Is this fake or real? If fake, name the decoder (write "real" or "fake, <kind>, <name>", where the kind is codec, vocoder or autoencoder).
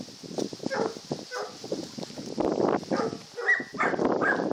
real